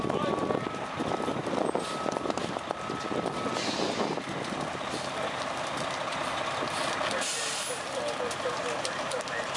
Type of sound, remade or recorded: recorded